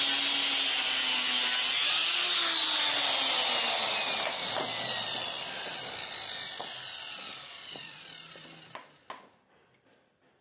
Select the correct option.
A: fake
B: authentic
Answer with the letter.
B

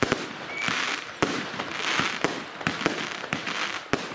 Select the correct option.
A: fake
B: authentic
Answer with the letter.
A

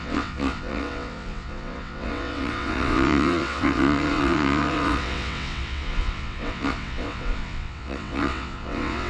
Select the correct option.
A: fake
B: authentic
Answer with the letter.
A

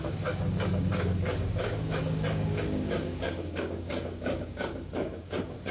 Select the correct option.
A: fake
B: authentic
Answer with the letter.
A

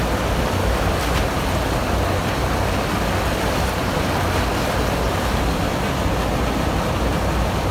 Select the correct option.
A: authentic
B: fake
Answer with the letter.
A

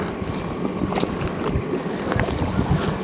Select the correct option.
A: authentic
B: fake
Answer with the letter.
A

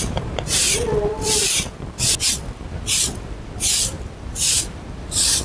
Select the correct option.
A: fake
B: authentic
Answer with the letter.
A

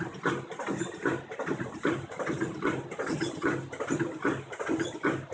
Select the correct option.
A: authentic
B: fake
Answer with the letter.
A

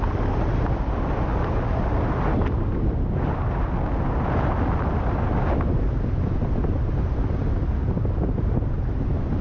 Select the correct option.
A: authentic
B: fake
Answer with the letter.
A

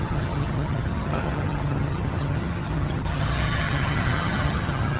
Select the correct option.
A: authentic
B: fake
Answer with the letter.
B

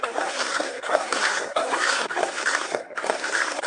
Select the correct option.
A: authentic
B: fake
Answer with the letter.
B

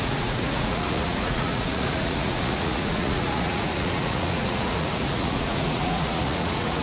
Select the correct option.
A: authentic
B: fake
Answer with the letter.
B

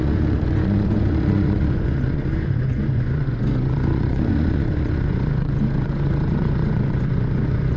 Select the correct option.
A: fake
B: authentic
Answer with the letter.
A